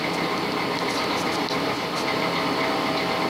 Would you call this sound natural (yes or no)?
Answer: yes